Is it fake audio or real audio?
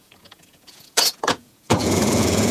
fake